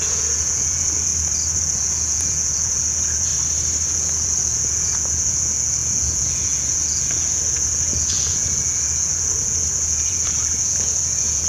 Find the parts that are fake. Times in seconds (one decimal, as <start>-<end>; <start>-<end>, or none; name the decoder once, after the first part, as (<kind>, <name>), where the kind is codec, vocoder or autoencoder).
0.0-1.1 (vocoder, Vocos); 1.6-3.3; 3.9-11.5